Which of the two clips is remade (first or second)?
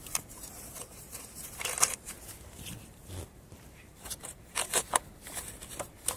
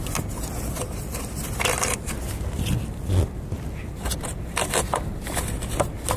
first